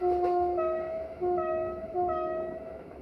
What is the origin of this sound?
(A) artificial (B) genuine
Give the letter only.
A